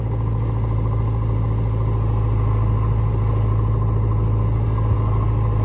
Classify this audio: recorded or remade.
recorded